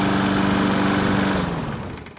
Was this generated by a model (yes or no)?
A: no